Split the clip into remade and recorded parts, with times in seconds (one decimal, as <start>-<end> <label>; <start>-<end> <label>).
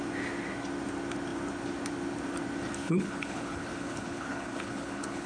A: 0.0-2.8 recorded; 2.8-5.3 remade